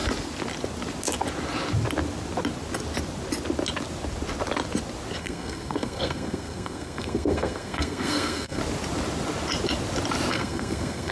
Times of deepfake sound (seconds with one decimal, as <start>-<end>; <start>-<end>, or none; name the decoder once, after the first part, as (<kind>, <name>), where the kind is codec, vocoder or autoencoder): 5.2-8.6 (codec, SNAC); 10.3-11.1